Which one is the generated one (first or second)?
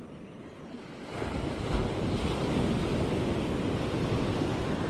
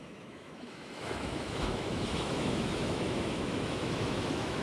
second